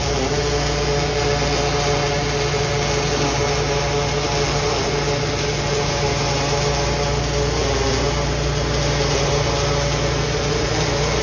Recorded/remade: recorded